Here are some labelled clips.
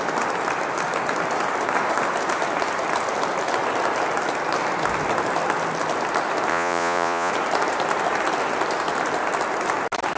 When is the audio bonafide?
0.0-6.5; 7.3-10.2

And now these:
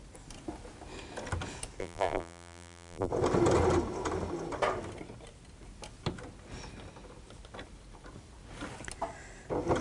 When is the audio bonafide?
0.0-1.8; 3.1-9.8

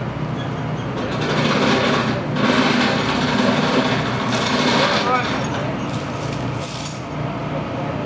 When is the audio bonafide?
0.0-8.1

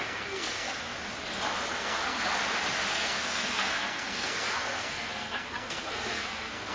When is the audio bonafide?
0.9-1.7; 2.4-2.9